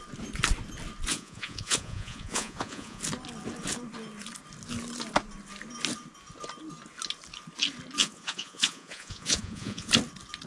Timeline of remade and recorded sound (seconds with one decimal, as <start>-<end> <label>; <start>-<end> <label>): 0.0-1.1 recorded; 1.1-3.0 remade; 3.0-8.0 recorded; 8.0-9.9 remade; 9.9-10.5 recorded